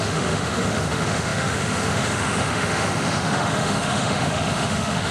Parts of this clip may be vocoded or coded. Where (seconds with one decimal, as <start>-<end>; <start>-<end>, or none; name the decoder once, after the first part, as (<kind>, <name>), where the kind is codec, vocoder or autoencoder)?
0.0-5.1 (autoencoder, DAC-VAE)